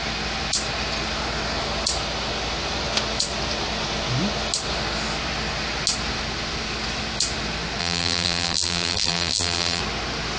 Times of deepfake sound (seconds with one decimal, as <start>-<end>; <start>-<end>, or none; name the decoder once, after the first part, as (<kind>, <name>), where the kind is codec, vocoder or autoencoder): 7.8-9.8 (vocoder, BigVGAN v2)